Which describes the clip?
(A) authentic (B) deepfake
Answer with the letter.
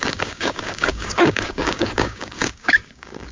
B